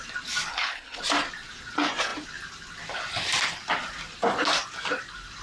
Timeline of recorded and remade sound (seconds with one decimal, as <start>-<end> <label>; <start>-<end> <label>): 0.0-0.5 recorded; 0.5-1.0 remade; 1.0-5.4 recorded